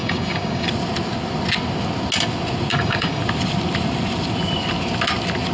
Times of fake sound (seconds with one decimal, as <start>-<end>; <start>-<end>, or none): 0.0-0.7; 2.7-3.2